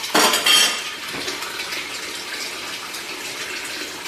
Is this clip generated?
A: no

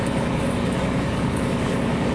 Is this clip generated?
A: yes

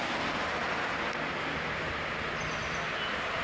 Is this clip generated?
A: no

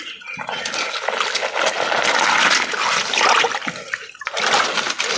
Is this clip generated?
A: no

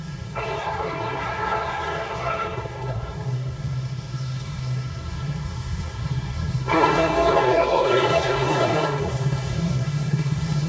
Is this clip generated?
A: yes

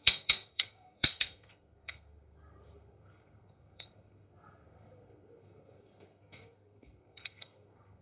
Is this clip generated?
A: yes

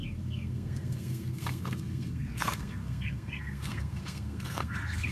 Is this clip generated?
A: yes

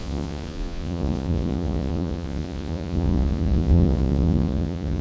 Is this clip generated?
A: yes